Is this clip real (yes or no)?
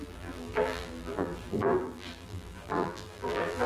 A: no